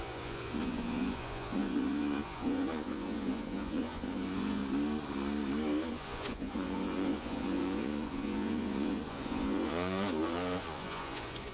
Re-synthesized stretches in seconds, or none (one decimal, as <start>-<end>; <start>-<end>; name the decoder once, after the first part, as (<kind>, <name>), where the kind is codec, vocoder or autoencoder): 0.0-4.6 (vocoder, Vocos); 5.9-11.5